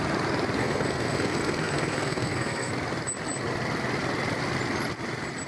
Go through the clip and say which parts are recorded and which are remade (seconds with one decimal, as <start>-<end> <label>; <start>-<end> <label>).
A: 0.0-0.6 recorded; 0.6-2.7 remade; 2.7-5.5 recorded